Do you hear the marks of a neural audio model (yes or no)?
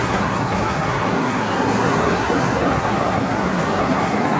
yes